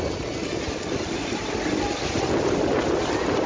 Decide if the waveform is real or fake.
real